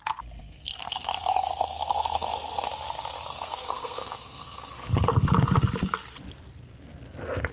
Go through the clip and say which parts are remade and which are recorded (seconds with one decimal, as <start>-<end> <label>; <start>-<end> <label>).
0.0-0.4 recorded; 0.4-2.7 remade; 2.7-3.3 recorded; 3.3-4.7 remade; 4.7-7.5 recorded